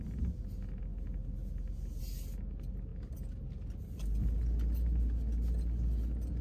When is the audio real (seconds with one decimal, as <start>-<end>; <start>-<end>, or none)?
0.0-6.4